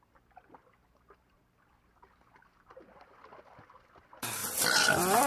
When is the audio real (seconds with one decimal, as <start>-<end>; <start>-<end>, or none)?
0.0-5.3